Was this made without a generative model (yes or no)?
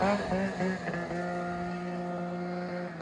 yes